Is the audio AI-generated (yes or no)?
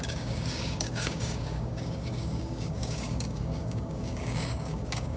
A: yes